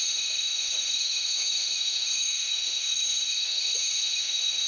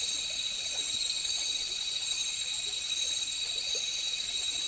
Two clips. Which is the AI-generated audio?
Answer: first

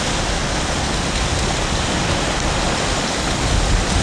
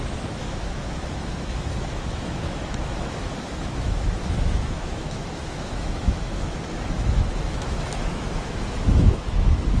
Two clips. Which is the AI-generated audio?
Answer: second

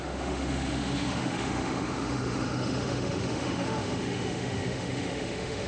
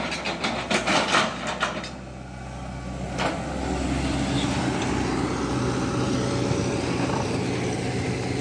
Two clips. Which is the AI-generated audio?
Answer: first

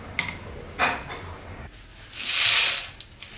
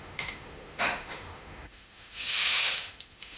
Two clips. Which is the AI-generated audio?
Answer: second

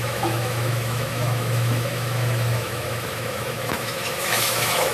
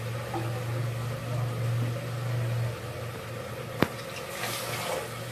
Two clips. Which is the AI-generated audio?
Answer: first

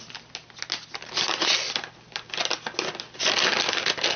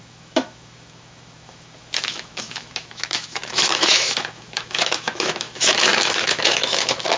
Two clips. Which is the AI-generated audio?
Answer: second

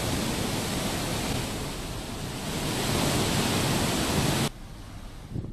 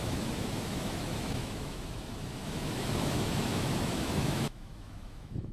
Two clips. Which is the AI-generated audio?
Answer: second